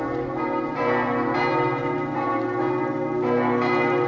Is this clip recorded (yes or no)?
yes